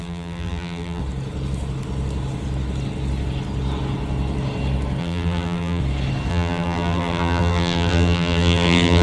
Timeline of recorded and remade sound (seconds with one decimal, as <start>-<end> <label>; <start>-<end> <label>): 0.0-1.0 remade; 1.0-5.0 recorded; 5.0-5.8 remade; 5.8-6.3 recorded; 6.3-9.0 remade